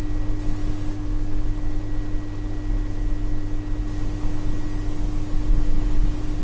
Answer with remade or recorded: recorded